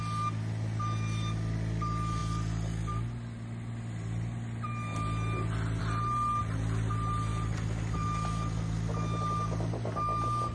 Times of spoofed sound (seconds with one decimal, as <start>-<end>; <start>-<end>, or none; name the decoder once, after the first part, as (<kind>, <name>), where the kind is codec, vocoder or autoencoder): none